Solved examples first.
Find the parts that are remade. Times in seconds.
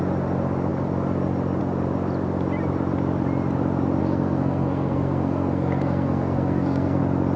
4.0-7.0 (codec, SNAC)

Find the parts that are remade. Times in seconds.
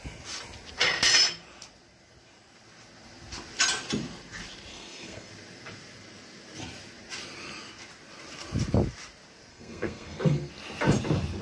4.7-5.3 (codec, SNAC); 9.5-10.5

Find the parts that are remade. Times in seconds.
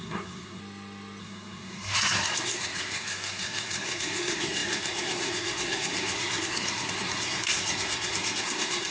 0.0-0.6 (codec, SNAC); 1.2-8.9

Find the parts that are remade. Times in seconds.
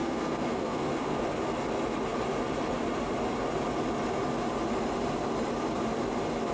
0.0-1.2 (codec, SNAC)